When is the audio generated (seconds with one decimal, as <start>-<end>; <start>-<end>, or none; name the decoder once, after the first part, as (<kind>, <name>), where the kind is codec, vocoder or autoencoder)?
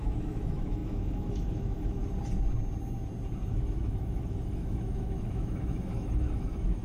0.0-2.0 (autoencoder, DAC-VAE); 3.5-6.8